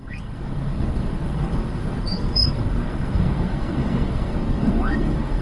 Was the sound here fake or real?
fake